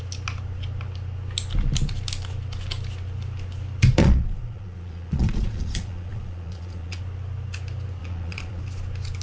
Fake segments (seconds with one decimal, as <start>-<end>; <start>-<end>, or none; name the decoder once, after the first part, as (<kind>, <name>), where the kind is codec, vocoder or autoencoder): 4.0-7.0 (vocoder, Vocos); 8.0-8.6